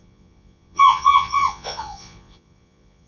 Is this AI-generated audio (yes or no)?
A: yes